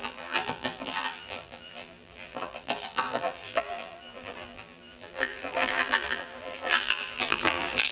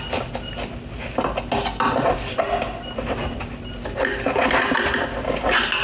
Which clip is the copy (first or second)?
first